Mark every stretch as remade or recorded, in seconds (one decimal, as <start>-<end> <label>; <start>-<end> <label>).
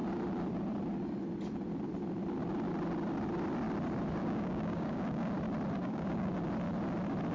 0.0-4.2 recorded; 4.2-5.3 remade; 5.3-5.8 recorded; 5.8-6.3 remade; 6.3-7.3 recorded